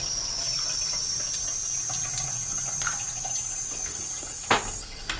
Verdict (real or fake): real